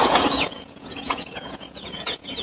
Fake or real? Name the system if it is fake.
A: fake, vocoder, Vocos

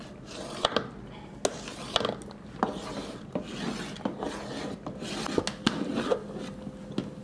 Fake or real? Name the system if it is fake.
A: real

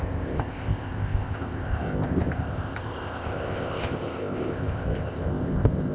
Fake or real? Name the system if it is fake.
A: fake, codec, ZipCodec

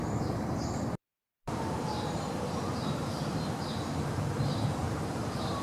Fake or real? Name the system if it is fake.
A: fake, vocoder, BigVGAN v2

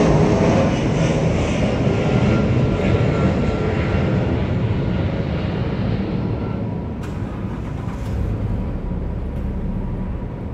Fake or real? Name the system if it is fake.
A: real